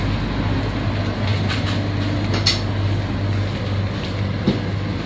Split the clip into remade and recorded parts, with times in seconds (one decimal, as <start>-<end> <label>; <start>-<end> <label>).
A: 0.0-5.1 recorded

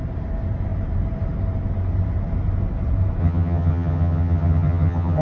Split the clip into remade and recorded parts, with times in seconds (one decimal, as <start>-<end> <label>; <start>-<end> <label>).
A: 0.0-3.2 recorded; 3.2-5.2 remade

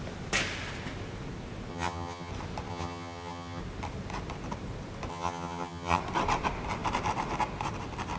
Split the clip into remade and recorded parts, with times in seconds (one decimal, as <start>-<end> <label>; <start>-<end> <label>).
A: 0.0-1.7 recorded; 1.7-2.3 remade; 2.3-2.7 recorded; 2.7-3.6 remade; 3.6-5.1 recorded; 5.1-6.0 remade; 6.0-8.2 recorded

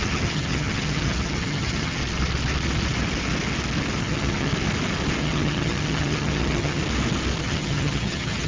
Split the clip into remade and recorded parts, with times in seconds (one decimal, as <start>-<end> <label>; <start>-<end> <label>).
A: 0.0-2.0 remade; 2.0-4.0 recorded; 4.0-4.5 remade; 4.5-5.2 recorded; 5.2-6.8 remade; 6.8-7.4 recorded; 7.4-8.5 remade

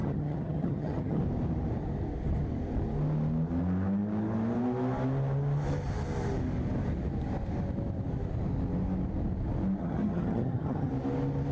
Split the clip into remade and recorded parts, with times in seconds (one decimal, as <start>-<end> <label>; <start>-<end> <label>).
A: 0.0-1.2 remade; 1.2-9.8 recorded; 9.8-10.9 remade; 10.9-11.5 recorded